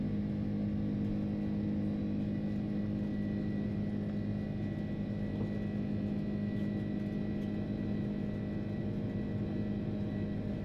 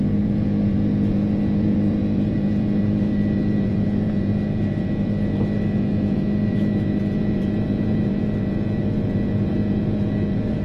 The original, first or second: first